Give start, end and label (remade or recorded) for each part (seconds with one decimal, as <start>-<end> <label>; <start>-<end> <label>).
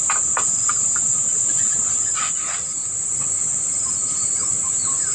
0.0-5.1 recorded